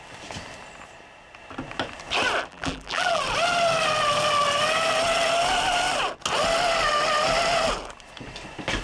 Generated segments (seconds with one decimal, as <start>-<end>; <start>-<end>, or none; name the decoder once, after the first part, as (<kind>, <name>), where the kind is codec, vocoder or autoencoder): 2.5-3.2 (vocoder, BigVGAN v2)